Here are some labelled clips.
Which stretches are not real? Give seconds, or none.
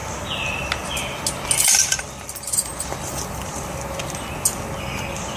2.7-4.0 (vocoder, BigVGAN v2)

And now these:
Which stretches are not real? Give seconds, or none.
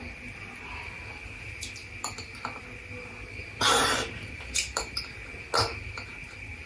3.8-5.0 (vocoder, BigVGAN v2)